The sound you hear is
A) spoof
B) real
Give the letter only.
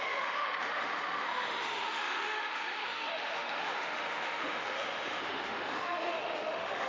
A